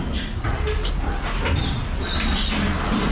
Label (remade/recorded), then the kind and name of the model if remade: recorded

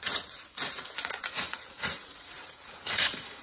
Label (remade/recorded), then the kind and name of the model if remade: remade, vocoder, Vocos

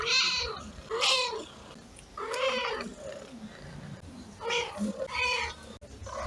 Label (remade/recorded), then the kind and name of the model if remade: recorded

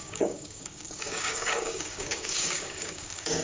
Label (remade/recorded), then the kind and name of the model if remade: remade, codec, DAC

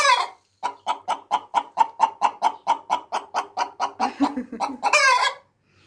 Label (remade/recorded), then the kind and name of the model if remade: recorded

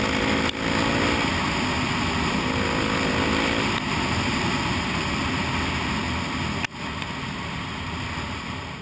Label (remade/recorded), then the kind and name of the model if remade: recorded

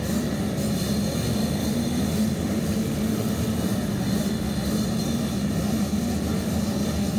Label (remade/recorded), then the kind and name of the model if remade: recorded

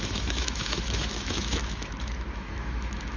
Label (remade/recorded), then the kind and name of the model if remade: remade, autoencoder, DAC-VAE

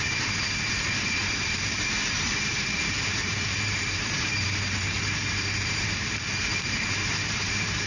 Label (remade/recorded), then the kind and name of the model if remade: remade, vocoder, BigVGAN v2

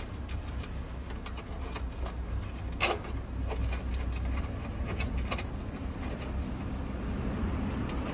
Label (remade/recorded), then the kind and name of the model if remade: recorded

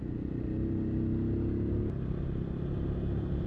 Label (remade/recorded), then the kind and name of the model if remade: recorded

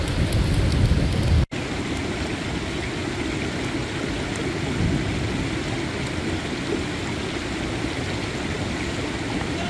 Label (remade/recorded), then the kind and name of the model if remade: recorded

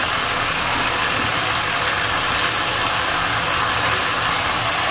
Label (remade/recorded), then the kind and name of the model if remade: recorded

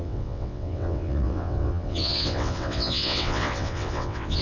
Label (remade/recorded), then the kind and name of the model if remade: remade, vocoder, WaveNeXt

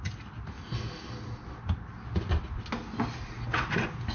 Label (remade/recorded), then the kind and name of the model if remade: recorded